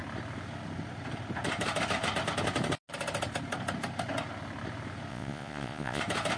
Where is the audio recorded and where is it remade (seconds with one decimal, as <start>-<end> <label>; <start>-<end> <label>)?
0.0-5.1 recorded; 5.1-6.0 remade; 6.0-6.4 recorded